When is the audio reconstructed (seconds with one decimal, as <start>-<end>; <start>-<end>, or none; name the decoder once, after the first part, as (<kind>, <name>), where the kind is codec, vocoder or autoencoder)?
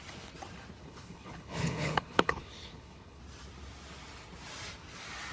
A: 0.8-3.2 (codec, HILCodec)